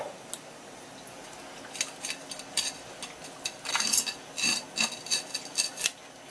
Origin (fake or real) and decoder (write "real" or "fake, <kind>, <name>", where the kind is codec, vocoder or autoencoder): real